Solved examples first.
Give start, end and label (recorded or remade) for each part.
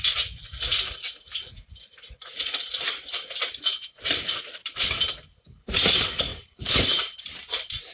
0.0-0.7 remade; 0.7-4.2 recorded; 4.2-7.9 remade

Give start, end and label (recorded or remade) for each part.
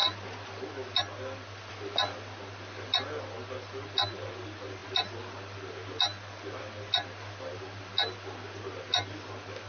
0.0-9.7 recorded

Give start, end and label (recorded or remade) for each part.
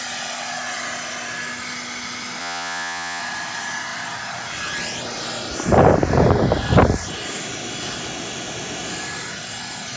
0.0-2.4 recorded; 2.4-3.2 remade; 3.2-10.0 recorded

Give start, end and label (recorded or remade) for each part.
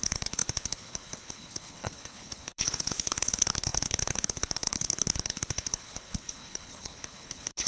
0.0-7.7 remade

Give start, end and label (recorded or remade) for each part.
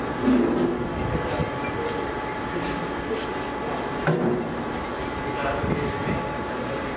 0.0-7.0 recorded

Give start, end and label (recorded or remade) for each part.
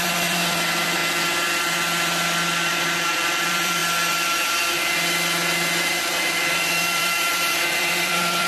0.0-1.0 remade; 1.0-2.7 recorded; 2.7-3.8 remade; 3.8-6.0 recorded; 6.0-8.5 remade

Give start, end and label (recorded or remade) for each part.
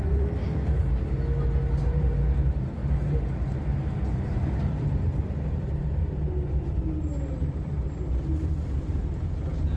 0.0-0.8 remade; 0.8-1.8 recorded; 1.8-2.8 remade; 2.8-3.4 recorded; 3.4-6.0 remade; 6.0-7.5 recorded; 7.5-9.8 remade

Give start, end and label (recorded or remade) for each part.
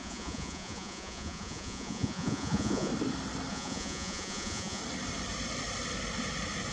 0.0-2.9 remade; 2.9-3.5 recorded; 3.5-4.8 remade; 4.8-6.7 recorded